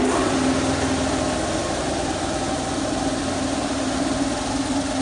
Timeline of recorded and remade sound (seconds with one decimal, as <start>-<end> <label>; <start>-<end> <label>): 0.0-1.6 recorded; 1.6-4.4 remade; 4.4-5.0 recorded